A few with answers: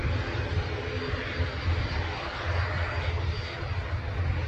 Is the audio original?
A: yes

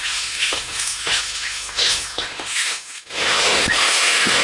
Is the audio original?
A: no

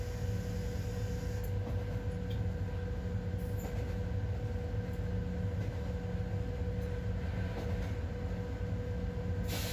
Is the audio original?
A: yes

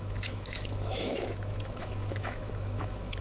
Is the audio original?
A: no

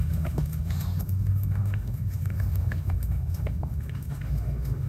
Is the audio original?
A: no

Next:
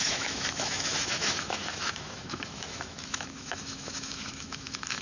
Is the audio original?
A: no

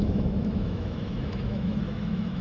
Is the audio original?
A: no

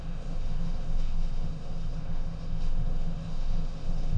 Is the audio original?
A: no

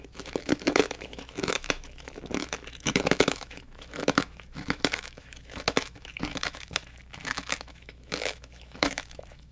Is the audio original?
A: no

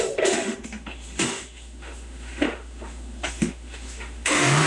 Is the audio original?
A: no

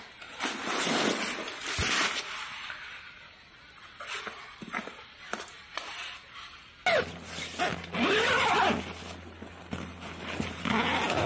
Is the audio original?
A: yes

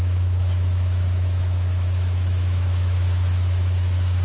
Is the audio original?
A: no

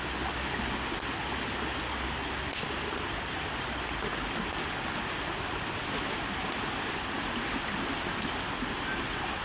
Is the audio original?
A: yes